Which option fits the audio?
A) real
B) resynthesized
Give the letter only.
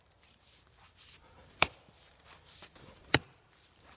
B